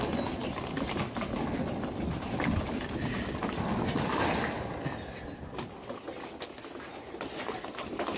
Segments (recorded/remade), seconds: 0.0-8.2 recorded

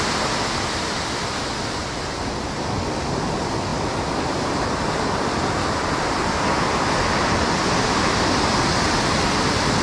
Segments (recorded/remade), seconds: 0.0-9.8 recorded

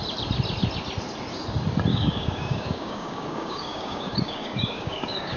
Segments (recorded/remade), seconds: 0.0-1.9 recorded; 1.9-5.4 remade

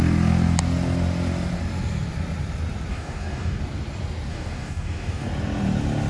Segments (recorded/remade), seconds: 0.0-2.9 recorded; 2.9-3.6 remade; 3.6-4.3 recorded; 4.3-5.3 remade; 5.3-6.1 recorded

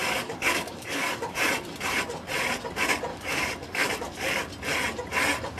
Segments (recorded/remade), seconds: 0.0-1.4 remade; 1.4-3.1 recorded; 3.1-4.5 remade; 4.5-5.6 recorded

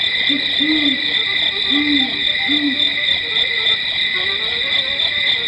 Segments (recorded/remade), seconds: 0.0-5.5 recorded

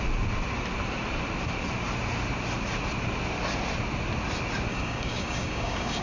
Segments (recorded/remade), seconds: 0.0-4.7 recorded; 4.7-6.0 remade

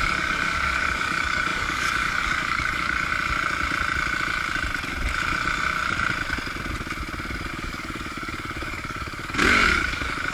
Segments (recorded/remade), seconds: 0.0-3.1 remade; 3.1-7.5 recorded; 7.5-10.3 remade